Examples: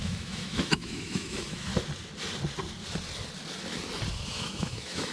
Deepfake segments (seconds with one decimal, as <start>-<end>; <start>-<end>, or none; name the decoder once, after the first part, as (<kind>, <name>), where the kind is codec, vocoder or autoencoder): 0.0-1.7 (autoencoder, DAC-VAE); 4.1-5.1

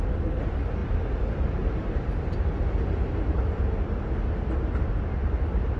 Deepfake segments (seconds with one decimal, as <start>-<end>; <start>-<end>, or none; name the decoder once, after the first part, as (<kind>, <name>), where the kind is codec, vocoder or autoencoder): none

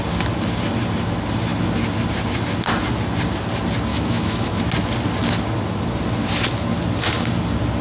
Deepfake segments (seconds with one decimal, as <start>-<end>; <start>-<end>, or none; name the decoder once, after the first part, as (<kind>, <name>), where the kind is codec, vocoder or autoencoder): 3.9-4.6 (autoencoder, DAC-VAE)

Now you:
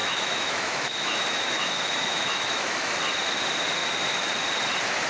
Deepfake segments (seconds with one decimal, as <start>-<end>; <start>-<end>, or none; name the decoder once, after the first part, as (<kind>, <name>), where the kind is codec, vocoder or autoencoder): 0.0-2.9 (autoencoder, DAC-VAE); 3.8-4.3